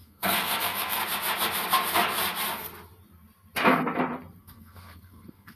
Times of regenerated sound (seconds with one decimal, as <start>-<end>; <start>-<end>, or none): 0.0-1.0; 4.4-5.6

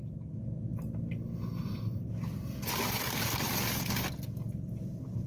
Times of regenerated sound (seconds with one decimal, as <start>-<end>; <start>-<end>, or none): none